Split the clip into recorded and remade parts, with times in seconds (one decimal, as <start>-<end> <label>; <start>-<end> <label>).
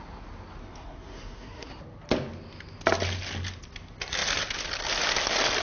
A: 0.0-0.6 recorded; 0.6-1.7 remade; 1.7-5.6 recorded